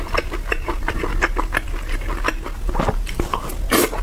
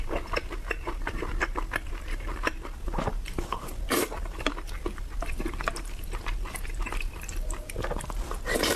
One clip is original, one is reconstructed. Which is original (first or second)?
first